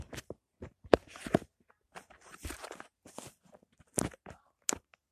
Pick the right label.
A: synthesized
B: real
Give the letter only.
B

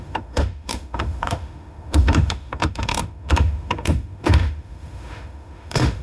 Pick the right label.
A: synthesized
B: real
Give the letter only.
A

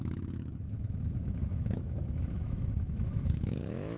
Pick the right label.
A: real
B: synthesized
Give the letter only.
B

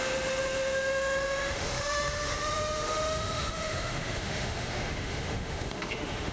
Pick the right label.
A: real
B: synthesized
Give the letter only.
B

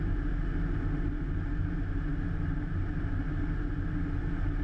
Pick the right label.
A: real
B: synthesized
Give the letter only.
A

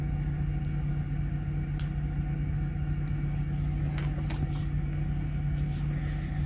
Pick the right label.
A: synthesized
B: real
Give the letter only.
B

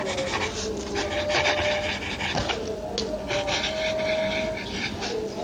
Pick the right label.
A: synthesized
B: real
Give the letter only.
B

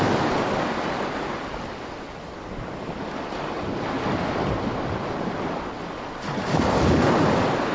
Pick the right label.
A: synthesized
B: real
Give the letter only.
B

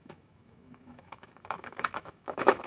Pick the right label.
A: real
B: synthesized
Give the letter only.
B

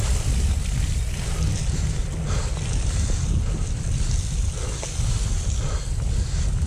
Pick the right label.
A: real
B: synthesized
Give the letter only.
A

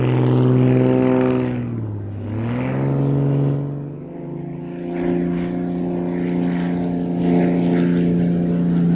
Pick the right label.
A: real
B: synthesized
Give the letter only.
A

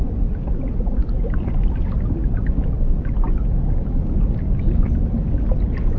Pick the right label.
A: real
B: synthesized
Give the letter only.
A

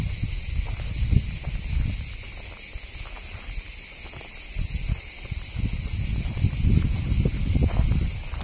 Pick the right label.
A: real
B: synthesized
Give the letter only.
A